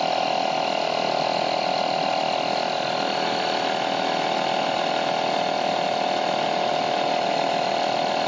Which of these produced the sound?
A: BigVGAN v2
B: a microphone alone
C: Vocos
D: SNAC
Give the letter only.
B